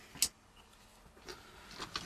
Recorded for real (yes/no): yes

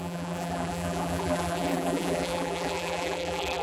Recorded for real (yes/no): no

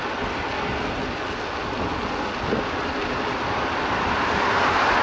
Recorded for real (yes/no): yes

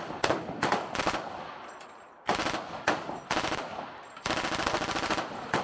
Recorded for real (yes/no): yes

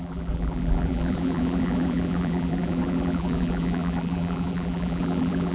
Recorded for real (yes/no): no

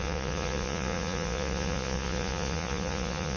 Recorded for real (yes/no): no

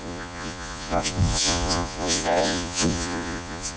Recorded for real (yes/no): no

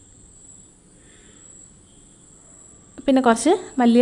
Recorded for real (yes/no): yes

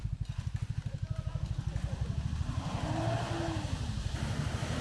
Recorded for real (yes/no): yes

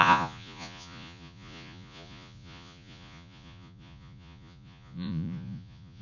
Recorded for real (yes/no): no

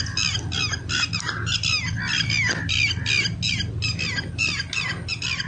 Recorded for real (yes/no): yes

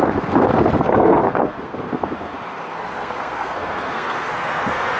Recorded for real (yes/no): no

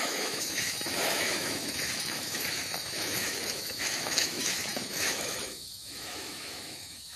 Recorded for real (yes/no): no